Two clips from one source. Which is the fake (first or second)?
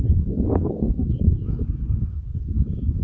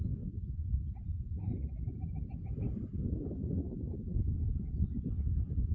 first